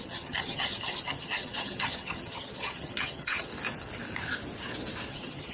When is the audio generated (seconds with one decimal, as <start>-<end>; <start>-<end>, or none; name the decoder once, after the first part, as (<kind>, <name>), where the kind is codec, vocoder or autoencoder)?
0.0-3.5 (vocoder, HiFi-GAN); 5.1-5.5